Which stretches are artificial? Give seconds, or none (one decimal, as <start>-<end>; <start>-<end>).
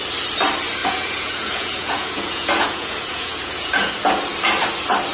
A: 0.8-3.9